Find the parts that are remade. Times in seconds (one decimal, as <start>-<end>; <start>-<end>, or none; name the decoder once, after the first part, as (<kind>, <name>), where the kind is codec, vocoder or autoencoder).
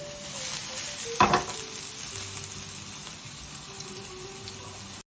none